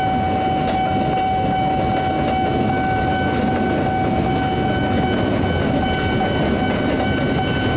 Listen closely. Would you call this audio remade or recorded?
recorded